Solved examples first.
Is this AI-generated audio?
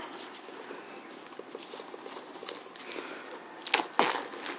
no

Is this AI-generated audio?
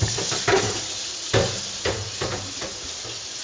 no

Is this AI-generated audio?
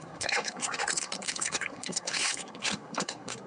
yes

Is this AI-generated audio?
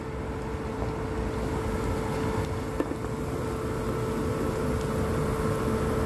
no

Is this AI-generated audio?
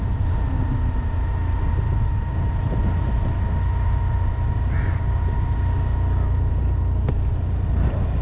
no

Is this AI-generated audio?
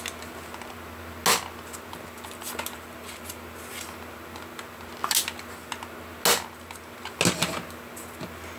no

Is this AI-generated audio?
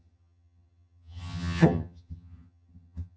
yes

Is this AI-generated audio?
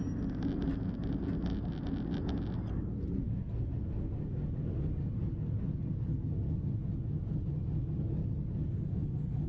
no